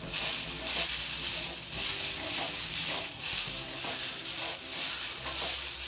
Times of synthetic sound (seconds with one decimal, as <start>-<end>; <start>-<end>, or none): none